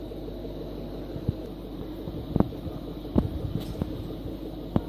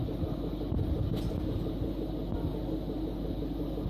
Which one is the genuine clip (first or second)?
second